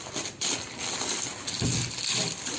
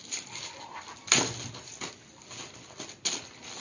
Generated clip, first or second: first